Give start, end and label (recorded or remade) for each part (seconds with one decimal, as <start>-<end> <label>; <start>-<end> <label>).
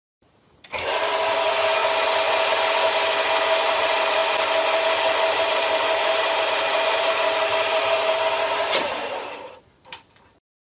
0.0-1.8 remade; 1.8-3.7 recorded; 3.7-4.2 remade; 4.2-5.3 recorded; 5.3-10.7 remade